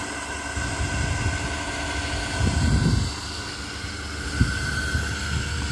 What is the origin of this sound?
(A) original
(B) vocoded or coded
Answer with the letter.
A